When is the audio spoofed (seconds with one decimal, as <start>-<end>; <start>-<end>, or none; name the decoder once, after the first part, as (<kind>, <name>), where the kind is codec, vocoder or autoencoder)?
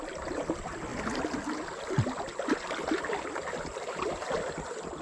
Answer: none